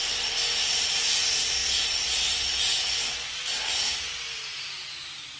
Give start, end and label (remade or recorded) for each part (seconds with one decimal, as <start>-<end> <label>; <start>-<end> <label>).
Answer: 0.0-5.4 recorded